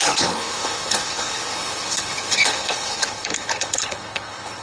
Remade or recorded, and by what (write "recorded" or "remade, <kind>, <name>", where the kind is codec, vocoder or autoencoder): remade, codec, HILCodec